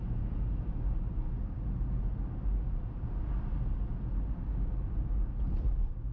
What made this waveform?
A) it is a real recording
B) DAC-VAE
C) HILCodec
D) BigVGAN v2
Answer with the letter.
A